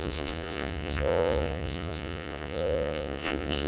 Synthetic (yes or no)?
yes